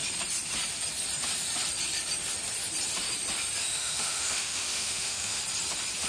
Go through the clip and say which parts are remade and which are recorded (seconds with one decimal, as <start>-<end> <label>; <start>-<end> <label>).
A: 0.0-3.6 recorded; 3.6-5.4 remade; 5.4-6.1 recorded